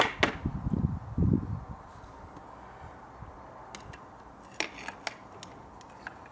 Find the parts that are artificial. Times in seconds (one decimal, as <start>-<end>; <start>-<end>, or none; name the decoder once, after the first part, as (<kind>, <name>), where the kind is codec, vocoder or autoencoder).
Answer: none